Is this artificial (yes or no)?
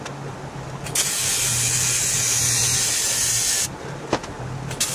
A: no